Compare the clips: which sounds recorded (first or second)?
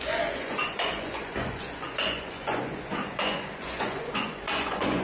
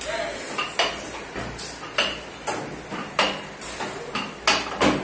second